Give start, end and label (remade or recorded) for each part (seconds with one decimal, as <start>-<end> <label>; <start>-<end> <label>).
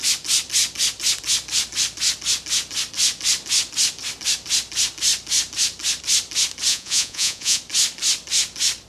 0.0-6.7 recorded; 6.7-7.6 remade; 7.6-8.9 recorded